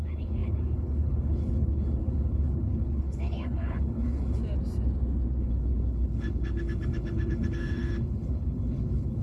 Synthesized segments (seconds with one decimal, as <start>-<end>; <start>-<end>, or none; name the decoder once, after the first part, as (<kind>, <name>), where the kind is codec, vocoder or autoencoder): 0.0-4.4 (codec, HILCodec); 5.4-9.2